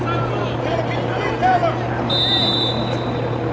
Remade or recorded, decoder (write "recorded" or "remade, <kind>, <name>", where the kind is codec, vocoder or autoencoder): recorded